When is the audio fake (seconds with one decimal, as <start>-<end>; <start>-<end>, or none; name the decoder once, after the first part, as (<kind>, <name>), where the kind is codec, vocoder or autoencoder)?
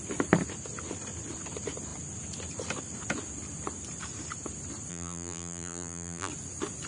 4.9-6.3 (vocoder, BigVGAN v2)